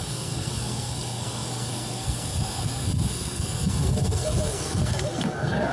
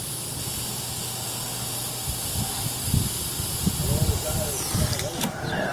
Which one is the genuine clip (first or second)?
second